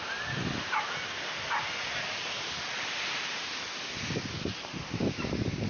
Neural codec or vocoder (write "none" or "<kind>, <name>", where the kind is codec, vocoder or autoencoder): none